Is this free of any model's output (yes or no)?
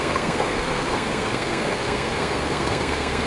no